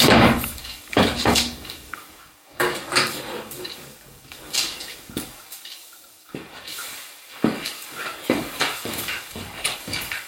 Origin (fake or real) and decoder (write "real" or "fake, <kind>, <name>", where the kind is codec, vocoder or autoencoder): fake, codec, DAC